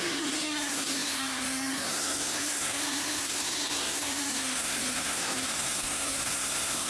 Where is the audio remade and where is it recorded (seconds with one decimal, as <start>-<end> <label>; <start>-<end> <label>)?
0.0-6.9 remade